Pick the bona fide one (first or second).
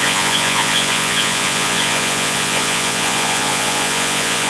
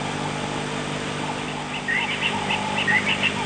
second